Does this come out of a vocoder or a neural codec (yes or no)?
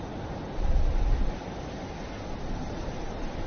no